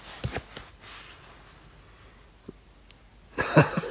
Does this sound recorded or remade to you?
recorded